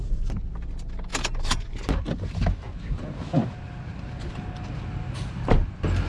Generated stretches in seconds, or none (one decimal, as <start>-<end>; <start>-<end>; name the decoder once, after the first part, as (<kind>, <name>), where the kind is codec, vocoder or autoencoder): none